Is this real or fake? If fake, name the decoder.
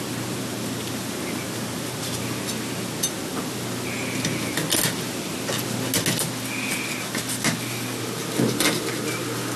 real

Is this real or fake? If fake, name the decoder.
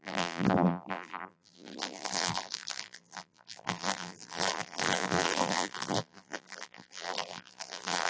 fake, vocoder, BigVGAN v2